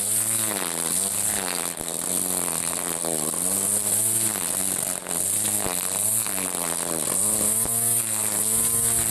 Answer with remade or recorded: recorded